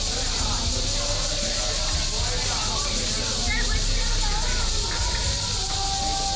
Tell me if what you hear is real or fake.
real